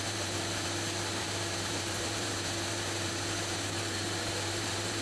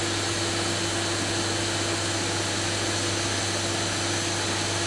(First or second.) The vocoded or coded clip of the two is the first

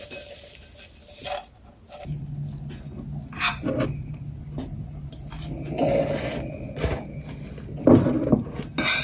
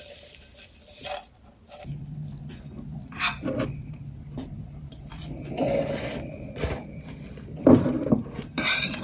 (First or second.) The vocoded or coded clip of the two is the second